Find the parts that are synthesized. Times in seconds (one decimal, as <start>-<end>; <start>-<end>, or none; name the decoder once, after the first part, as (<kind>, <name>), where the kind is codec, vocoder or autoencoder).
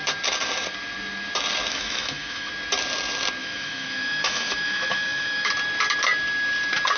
1.7-2.5 (autoencoder, DAC-VAE); 3.4-5.5